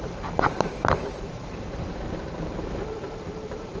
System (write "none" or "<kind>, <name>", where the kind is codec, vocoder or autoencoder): vocoder, BigVGAN v2